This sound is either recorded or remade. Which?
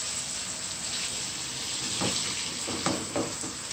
recorded